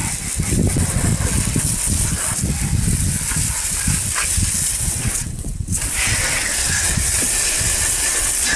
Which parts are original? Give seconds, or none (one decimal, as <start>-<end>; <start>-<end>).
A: 0.0-0.7; 1.1-4.7